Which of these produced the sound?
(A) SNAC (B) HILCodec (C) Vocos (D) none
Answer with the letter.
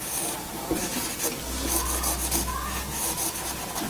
D